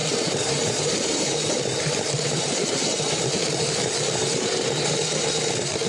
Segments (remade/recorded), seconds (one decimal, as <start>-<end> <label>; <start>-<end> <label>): 0.0-3.3 remade; 3.3-4.2 recorded; 4.2-4.8 remade; 4.8-5.9 recorded